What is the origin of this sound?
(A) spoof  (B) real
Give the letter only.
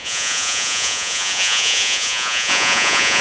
A